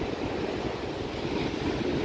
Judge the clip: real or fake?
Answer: real